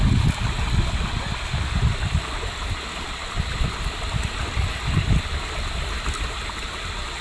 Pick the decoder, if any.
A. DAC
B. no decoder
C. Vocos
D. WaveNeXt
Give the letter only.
B